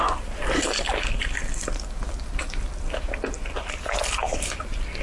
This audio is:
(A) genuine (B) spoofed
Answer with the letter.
B